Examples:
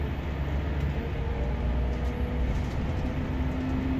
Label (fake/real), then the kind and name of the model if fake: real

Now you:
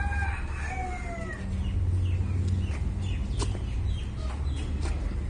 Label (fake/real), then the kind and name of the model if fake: real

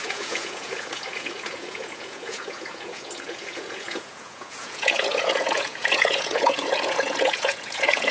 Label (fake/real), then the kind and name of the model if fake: fake, vocoder, Vocos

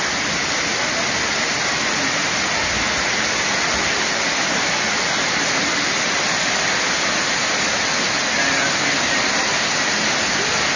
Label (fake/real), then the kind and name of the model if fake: real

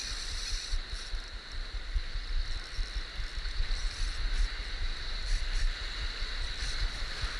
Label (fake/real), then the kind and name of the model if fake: real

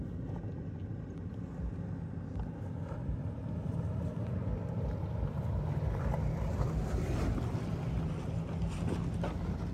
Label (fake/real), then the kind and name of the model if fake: real